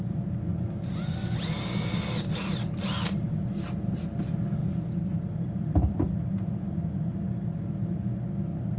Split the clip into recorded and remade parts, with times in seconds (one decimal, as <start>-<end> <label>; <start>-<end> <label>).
0.0-8.8 recorded

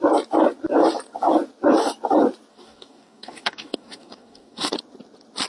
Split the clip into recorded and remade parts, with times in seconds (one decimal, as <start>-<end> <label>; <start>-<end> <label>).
0.0-2.5 recorded; 2.5-4.7 remade; 4.7-5.5 recorded

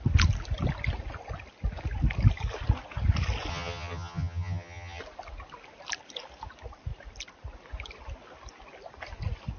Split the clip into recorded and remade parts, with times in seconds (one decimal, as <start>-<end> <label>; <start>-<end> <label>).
0.0-3.5 recorded; 3.5-5.0 remade; 5.0-9.6 recorded

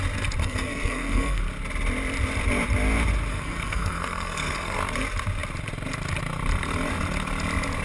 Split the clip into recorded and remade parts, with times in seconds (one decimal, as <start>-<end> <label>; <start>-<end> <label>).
0.0-0.4 recorded; 0.4-1.4 remade; 1.4-3.3 recorded; 3.3-4.8 remade; 4.8-7.8 recorded

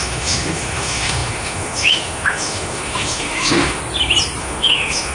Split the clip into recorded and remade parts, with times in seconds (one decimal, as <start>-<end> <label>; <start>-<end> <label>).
0.0-3.8 remade; 3.8-4.4 recorded; 4.4-5.1 remade

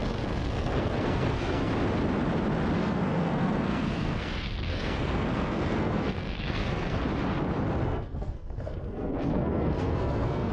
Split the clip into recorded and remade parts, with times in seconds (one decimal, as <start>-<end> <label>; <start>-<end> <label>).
0.0-1.7 remade; 1.7-2.8 recorded; 2.8-7.0 remade; 7.0-7.8 recorded; 7.8-10.5 remade

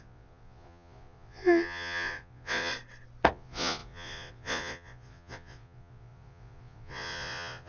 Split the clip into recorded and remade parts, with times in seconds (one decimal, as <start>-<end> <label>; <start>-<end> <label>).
0.0-2.7 remade; 2.7-3.3 recorded; 3.3-7.7 remade